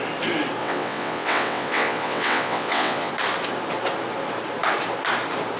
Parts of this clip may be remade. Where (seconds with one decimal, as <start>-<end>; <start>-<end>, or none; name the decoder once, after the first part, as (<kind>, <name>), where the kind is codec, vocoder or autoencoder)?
0.6-3.1 (vocoder, WaveNeXt)

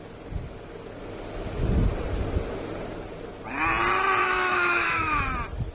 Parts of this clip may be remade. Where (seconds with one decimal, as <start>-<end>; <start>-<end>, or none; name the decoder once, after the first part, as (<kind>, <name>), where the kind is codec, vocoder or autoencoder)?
4.2-5.2 (autoencoder, DAC-VAE)